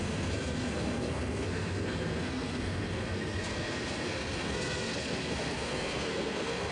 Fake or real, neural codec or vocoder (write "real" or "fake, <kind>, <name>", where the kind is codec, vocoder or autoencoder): fake, codec, SNAC